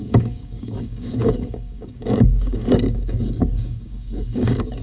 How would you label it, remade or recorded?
remade